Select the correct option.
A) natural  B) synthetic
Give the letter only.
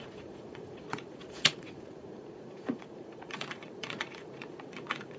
B